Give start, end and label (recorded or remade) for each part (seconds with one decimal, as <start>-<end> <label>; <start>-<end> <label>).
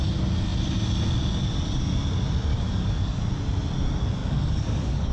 0.0-2.5 recorded; 2.5-3.2 remade; 3.2-4.2 recorded; 4.2-5.1 remade